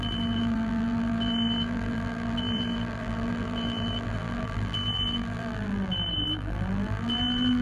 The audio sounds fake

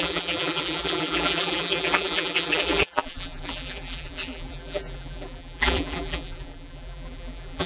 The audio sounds fake